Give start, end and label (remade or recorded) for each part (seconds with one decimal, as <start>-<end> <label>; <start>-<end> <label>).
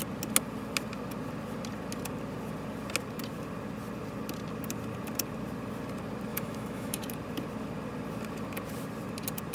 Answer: 0.0-6.3 recorded; 6.3-7.0 remade; 7.0-9.5 recorded